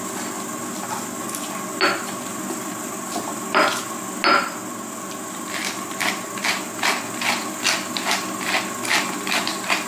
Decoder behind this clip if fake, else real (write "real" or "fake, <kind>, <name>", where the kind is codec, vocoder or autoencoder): real